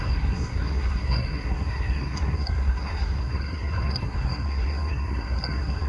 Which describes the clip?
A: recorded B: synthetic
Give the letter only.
B